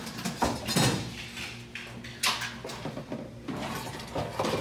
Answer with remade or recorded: recorded